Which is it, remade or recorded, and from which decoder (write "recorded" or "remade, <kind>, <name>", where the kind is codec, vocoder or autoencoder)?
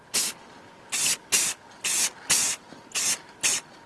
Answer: recorded